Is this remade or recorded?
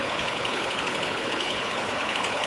remade